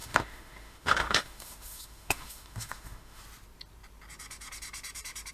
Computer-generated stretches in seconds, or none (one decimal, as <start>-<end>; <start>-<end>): 0.0-3.2